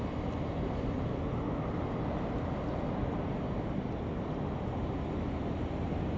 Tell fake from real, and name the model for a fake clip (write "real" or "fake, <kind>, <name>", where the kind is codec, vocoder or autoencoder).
real